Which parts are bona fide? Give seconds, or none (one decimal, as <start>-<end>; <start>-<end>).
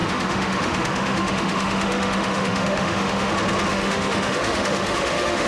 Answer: 3.3-3.7